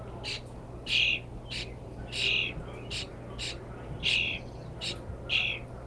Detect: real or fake real